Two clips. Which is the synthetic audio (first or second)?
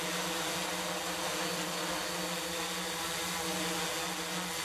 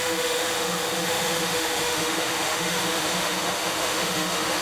second